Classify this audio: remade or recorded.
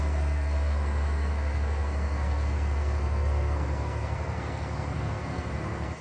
remade